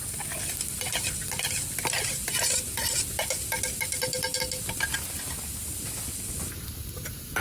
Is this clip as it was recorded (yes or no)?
yes